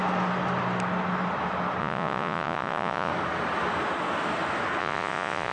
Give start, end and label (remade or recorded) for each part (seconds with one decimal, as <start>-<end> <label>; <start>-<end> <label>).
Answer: 0.0-1.8 recorded; 1.8-3.1 remade; 3.1-4.8 recorded; 4.8-5.5 remade